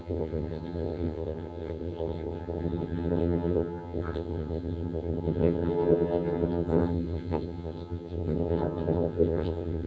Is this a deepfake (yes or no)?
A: yes